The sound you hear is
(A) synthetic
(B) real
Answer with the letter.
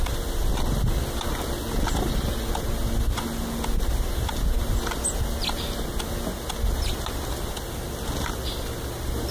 B